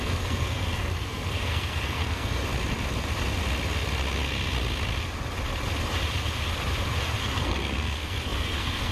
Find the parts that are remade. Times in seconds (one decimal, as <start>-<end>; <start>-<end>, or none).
0.0-2.4; 7.2-8.9